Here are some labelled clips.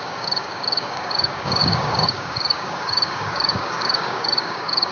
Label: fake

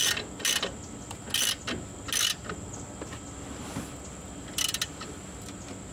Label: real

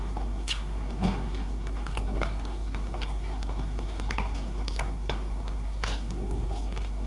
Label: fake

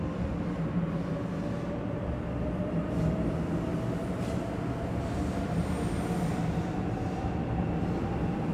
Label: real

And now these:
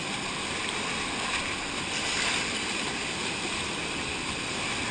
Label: real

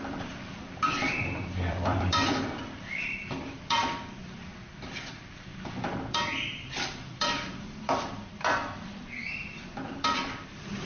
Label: fake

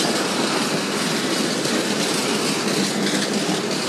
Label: real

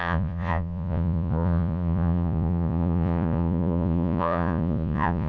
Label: fake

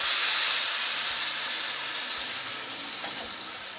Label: real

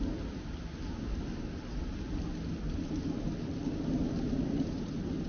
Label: real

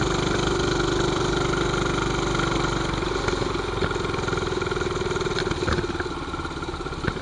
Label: real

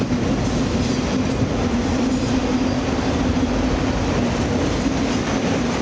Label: real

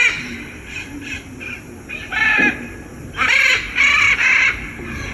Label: real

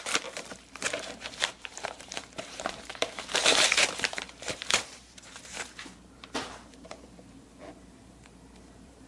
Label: fake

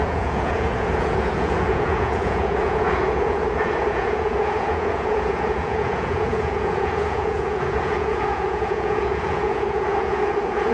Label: fake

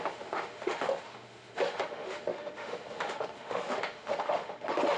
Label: fake